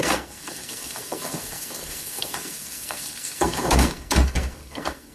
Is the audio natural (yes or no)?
no